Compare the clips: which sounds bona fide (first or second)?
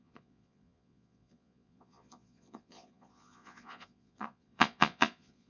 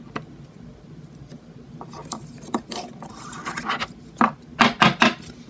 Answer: second